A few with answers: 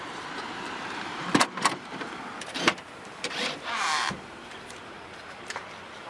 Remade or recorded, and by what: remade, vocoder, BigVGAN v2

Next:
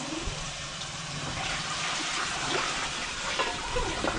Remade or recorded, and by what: remade, vocoder, BigVGAN v2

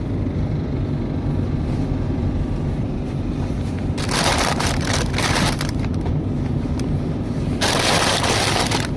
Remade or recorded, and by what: remade, vocoder, BigVGAN v2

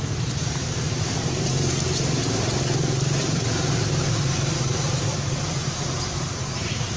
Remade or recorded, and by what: remade, vocoder, BigVGAN v2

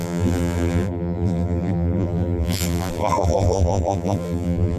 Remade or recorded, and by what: remade, vocoder, BigVGAN v2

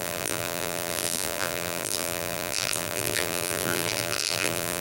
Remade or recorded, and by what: remade, vocoder, BigVGAN v2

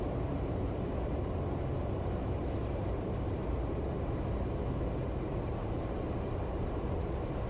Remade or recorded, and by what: remade, vocoder, BigVGAN v2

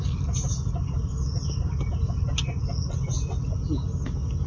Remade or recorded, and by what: recorded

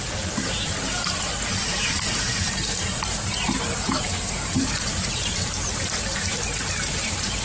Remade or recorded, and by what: remade, vocoder, BigVGAN v2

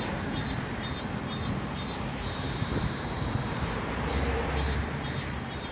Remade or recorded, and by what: remade, vocoder, BigVGAN v2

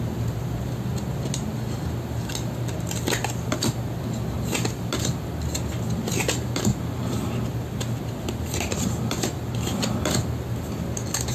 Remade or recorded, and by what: recorded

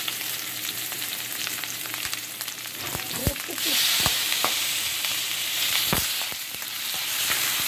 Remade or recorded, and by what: remade, vocoder, BigVGAN v2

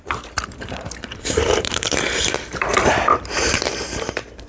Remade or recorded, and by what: remade, vocoder, BigVGAN v2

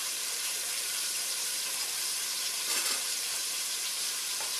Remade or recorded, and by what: remade, vocoder, BigVGAN v2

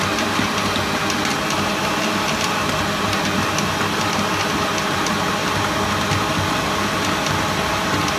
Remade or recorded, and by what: recorded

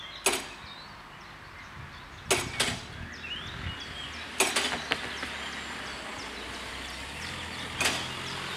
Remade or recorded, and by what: recorded